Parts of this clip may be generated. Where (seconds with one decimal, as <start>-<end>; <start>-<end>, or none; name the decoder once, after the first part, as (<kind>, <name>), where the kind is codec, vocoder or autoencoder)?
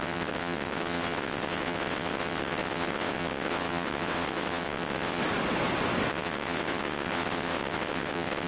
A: 0.0-5.2 (vocoder, WaveNeXt); 6.1-8.5